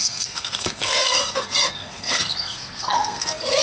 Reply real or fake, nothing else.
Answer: fake